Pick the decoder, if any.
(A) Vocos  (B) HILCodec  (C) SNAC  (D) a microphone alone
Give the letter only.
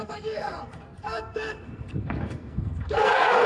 C